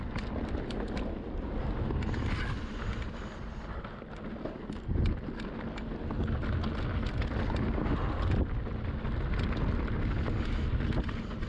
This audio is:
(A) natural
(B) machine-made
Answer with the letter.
A